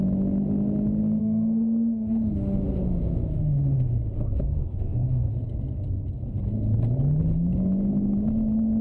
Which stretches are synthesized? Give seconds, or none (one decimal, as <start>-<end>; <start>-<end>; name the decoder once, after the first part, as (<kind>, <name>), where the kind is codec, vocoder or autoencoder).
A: 1.2-5.3 (autoencoder, DAC-VAE)